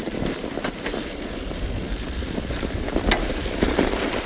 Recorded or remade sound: recorded